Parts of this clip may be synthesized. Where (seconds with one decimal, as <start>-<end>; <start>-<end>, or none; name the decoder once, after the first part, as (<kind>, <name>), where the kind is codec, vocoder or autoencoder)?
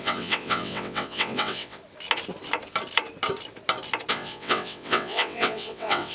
0.0-1.8 (vocoder, WaveNeXt); 4.1-6.1